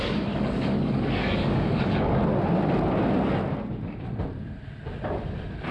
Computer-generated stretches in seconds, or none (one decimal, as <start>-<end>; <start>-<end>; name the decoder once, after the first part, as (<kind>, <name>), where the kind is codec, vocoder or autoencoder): 0.0-2.2 (codec, DAC)